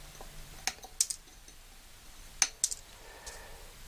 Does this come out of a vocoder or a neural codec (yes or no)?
no